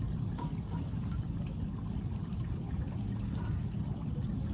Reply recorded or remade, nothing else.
recorded